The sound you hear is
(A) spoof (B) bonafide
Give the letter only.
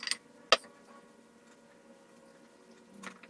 B